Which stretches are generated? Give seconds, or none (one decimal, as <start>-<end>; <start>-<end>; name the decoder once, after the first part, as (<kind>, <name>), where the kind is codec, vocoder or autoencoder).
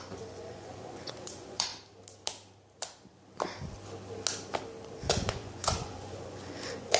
0.0-1.7 (vocoder, Vocos); 5.0-7.0